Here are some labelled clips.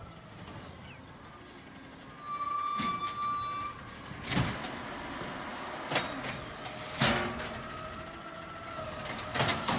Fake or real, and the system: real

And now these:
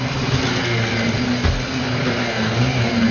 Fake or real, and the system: real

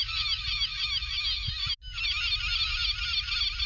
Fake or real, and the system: real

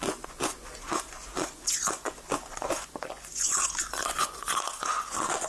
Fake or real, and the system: fake, vocoder, Vocos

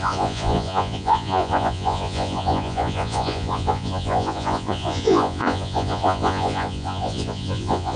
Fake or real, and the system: fake, vocoder, Vocos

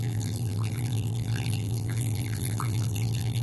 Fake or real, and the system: fake, vocoder, BigVGAN v2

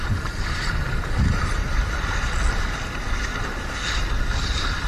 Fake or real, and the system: fake, vocoder, BigVGAN v2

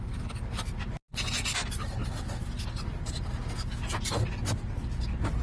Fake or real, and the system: real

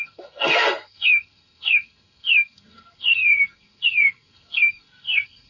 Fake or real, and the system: fake, codec, SNAC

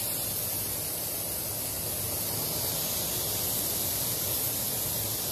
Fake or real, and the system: real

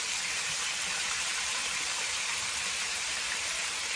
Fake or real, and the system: fake, vocoder, BigVGAN v2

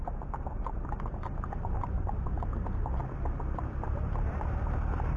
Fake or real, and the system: real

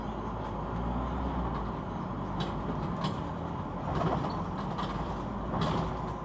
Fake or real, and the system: real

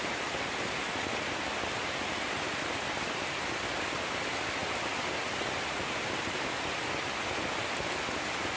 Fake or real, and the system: real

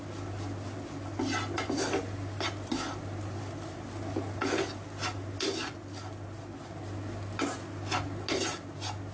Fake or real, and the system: real